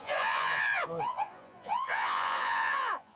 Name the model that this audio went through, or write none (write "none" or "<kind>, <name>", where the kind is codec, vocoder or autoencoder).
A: vocoder, Vocos